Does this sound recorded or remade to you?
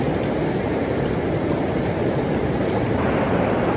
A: recorded